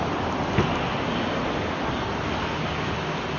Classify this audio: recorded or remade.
recorded